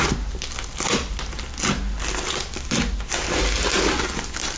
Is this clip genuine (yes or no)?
yes